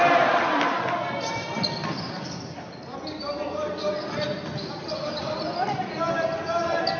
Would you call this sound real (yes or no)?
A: yes